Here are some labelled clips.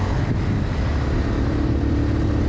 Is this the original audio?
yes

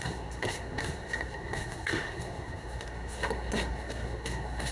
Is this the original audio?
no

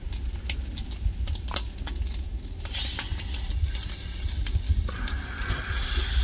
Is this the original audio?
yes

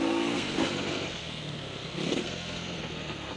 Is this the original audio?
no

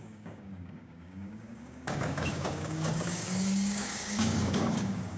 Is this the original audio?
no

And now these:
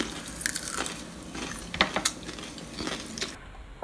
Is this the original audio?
yes